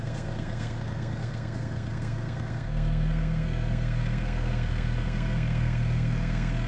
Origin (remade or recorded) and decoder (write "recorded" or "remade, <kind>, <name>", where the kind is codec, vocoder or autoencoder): remade, codec, SNAC